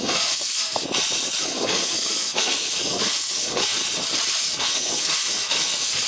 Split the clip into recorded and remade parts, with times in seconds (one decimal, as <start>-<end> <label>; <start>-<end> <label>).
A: 0.0-0.8 remade; 0.8-1.4 recorded; 1.4-3.8 remade; 3.8-4.4 recorded; 4.4-6.1 remade